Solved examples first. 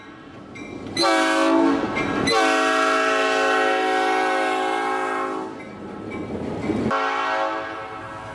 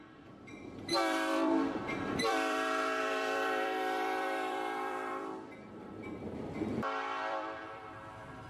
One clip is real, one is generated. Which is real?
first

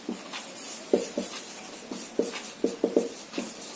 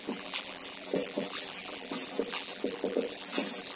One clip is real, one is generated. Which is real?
first